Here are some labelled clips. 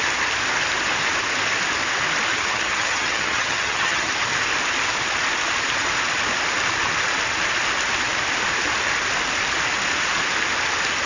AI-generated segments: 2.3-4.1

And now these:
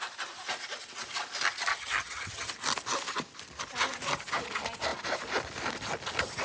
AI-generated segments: 1.7-2.5

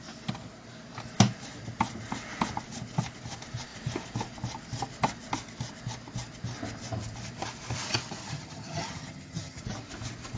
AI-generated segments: 8.2-9.6